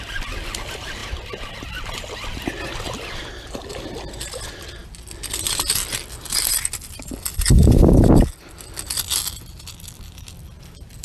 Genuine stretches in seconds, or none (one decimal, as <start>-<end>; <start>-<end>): 0.0-11.0